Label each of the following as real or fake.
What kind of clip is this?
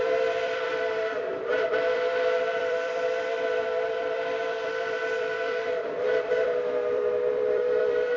fake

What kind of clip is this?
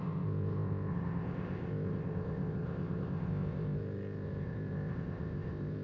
fake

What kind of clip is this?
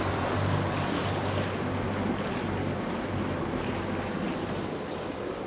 real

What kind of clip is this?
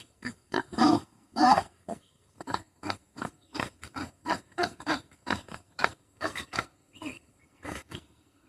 fake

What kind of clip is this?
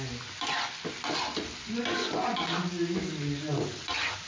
real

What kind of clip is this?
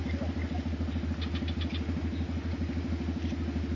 real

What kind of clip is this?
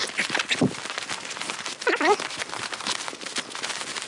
real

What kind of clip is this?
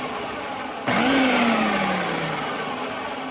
real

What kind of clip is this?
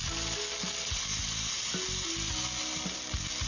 real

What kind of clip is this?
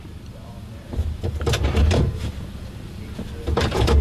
fake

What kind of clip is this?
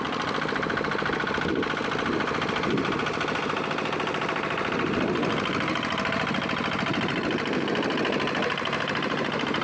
real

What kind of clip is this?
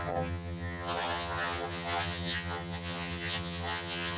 fake